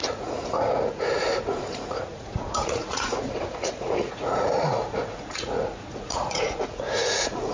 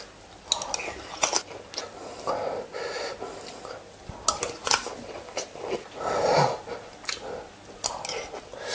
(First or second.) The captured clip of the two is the second